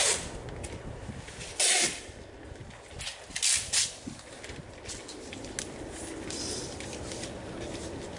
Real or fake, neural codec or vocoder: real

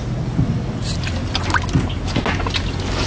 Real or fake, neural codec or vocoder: real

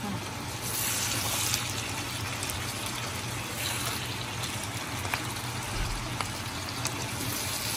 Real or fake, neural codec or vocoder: real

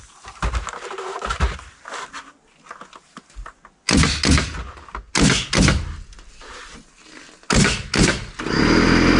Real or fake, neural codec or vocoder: real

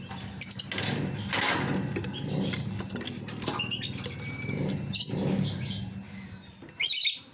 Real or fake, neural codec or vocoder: real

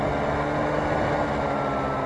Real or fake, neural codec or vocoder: real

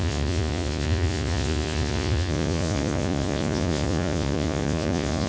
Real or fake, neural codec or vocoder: fake, vocoder, Vocos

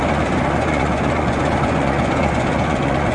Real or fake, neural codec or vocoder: fake, vocoder, Vocos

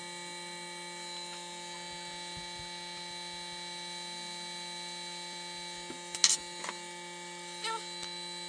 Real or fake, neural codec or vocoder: real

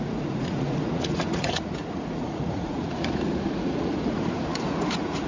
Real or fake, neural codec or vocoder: fake, vocoder, Vocos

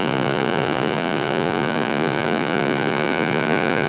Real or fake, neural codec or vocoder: fake, vocoder, Vocos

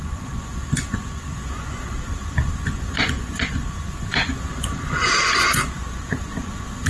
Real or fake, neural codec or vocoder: fake, vocoder, Vocos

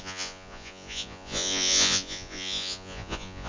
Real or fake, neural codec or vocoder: fake, vocoder, Vocos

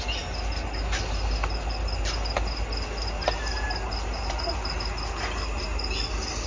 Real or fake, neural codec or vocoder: real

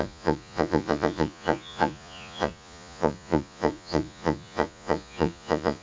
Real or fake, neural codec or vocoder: fake, vocoder, Vocos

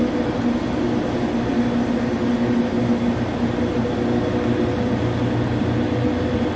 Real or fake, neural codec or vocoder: real